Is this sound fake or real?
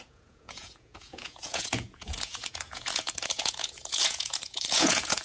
fake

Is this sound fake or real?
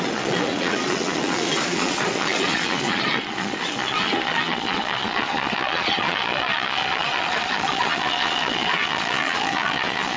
fake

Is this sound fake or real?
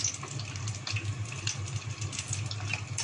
real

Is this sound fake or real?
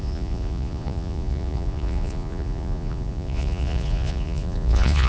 fake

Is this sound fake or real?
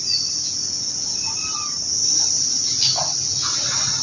real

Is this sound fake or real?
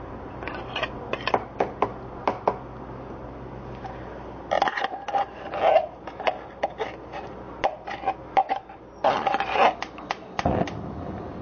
real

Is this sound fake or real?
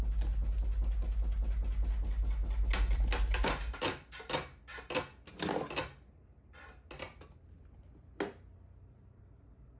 real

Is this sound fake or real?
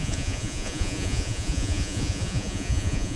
fake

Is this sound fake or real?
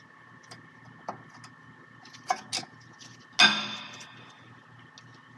real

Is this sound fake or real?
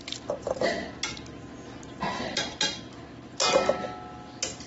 real